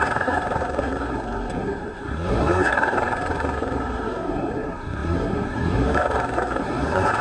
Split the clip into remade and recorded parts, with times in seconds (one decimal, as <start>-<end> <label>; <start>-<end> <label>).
0.0-7.2 remade